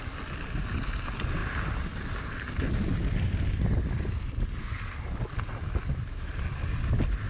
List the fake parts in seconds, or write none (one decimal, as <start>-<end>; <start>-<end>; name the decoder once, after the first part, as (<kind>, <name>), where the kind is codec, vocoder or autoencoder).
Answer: none